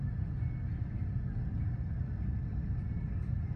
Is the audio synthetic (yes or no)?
no